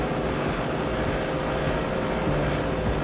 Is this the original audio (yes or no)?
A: yes